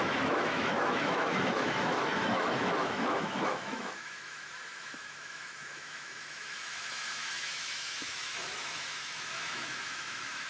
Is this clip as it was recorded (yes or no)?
no